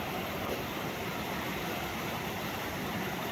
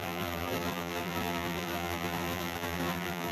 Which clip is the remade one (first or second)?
second